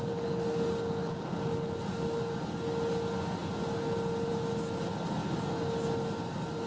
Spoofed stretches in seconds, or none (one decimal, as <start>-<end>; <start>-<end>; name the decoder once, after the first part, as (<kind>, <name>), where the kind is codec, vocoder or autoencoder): none